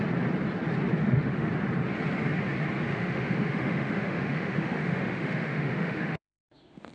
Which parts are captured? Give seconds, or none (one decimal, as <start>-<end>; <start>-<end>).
0.0-1.0; 1.5-2.9